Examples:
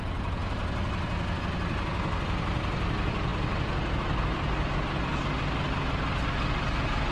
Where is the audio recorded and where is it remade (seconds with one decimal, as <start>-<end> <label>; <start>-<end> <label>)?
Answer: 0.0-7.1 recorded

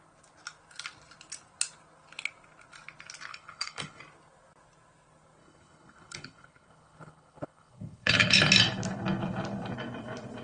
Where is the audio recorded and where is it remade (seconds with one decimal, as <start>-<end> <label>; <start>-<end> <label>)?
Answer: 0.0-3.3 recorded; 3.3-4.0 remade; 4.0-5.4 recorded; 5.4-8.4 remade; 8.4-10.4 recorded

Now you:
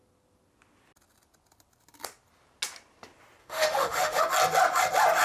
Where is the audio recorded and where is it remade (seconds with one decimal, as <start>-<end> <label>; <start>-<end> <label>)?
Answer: 0.0-3.4 recorded; 3.4-4.2 remade; 4.2-5.2 recorded

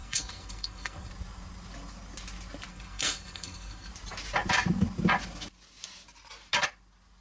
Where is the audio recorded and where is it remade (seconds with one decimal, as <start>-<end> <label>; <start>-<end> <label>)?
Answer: 0.0-1.1 remade; 1.1-2.7 recorded; 2.7-3.9 remade; 3.9-7.2 recorded

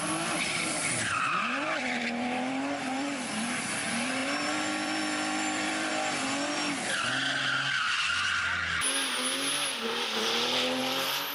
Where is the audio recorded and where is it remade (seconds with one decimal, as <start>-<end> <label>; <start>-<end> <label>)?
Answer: 0.0-5.9 remade; 5.9-10.8 recorded; 10.8-11.3 remade